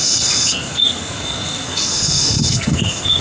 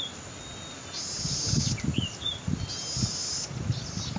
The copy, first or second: first